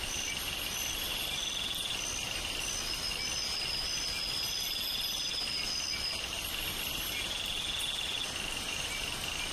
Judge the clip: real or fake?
real